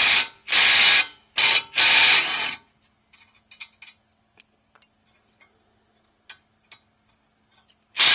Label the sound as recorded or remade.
recorded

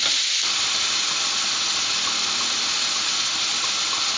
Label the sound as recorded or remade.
recorded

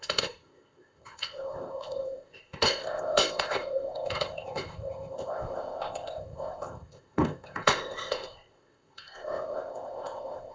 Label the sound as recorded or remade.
remade